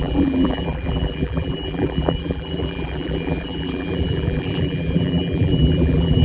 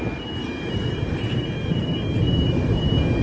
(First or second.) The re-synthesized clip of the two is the first